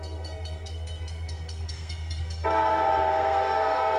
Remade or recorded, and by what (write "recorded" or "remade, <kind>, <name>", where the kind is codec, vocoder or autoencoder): remade, codec, SNAC